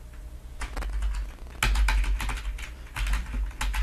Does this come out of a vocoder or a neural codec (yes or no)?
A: no